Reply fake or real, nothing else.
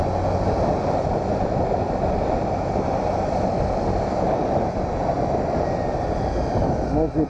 real